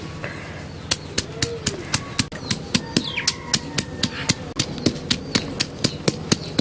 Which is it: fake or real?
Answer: real